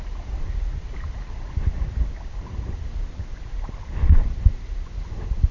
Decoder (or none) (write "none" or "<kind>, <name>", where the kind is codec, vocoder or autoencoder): none